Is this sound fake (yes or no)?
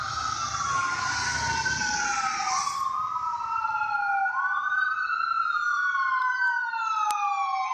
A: no